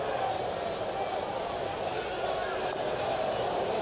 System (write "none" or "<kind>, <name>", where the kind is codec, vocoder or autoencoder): none